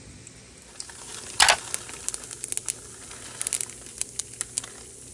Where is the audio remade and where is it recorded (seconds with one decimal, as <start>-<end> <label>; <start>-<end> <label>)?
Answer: 0.0-5.1 recorded